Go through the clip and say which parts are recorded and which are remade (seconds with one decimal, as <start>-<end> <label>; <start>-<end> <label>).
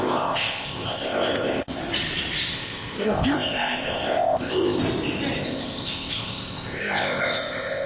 0.0-1.8 remade; 1.8-2.5 recorded; 2.5-4.8 remade; 4.8-5.4 recorded; 5.4-7.9 remade